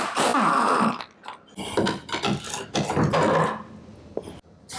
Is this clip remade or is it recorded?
recorded